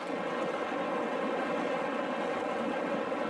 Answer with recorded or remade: remade